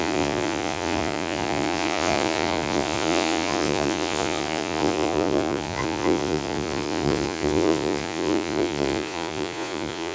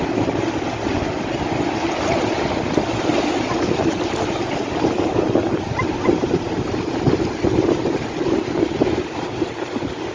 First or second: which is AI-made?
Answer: first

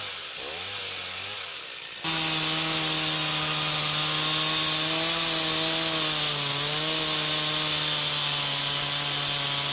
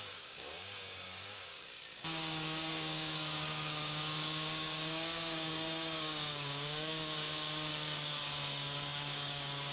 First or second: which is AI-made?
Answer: second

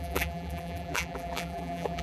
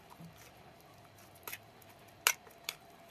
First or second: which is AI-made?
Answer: first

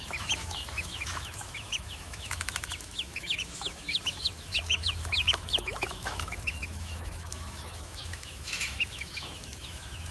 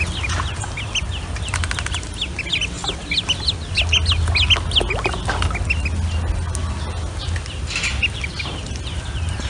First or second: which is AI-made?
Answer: first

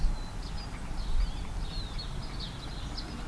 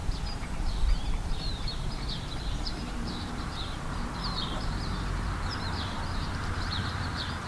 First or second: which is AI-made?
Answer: second